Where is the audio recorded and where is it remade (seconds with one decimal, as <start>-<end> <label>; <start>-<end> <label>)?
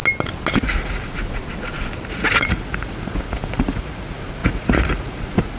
0.0-0.6 recorded; 0.6-1.2 remade; 1.2-2.1 recorded; 2.1-5.6 remade